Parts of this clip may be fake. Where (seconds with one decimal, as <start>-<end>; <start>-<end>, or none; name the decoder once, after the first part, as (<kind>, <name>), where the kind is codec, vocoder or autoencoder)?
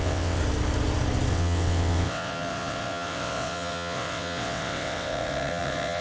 0.0-0.4 (vocoder, WaveNeXt); 1.3-6.0